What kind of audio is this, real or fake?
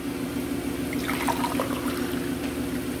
real